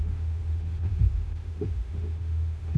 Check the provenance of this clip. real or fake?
fake